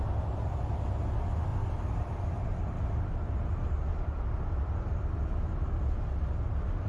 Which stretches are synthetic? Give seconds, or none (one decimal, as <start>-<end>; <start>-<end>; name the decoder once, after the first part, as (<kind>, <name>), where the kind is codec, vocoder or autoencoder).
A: 1.5-3.3 (vocoder, BigVGAN v2)